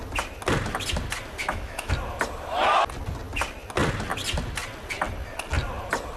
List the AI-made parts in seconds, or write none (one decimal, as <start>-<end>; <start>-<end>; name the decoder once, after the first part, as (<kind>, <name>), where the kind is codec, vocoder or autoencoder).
1.4-1.9 (autoencoder, DAC-VAE)